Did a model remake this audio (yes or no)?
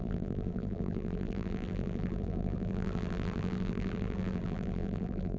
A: yes